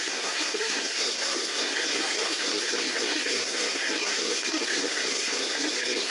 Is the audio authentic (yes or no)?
no